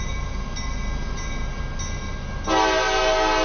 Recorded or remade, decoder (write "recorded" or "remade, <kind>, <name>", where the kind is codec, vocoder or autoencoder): recorded